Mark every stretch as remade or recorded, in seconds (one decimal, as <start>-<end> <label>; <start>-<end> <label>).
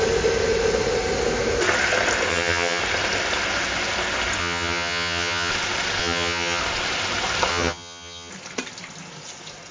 0.0-2.3 recorded; 2.3-2.8 remade; 2.8-4.4 recorded; 4.4-5.5 remade; 5.5-6.0 recorded; 6.0-6.6 remade; 6.6-7.5 recorded; 7.5-8.3 remade; 8.3-9.7 recorded